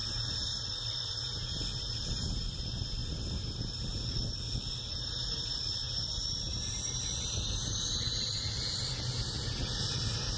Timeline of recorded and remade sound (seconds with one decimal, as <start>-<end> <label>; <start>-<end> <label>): 0.0-10.4 recorded